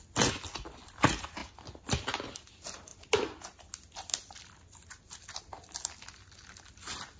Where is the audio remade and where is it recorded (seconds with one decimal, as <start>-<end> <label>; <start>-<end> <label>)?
0.0-7.2 recorded